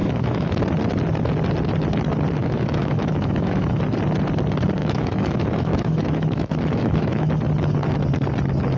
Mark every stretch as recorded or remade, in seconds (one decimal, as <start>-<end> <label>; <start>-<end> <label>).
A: 0.0-0.6 remade; 0.6-2.4 recorded; 2.4-3.8 remade; 3.8-4.8 recorded; 4.8-7.3 remade; 7.3-8.8 recorded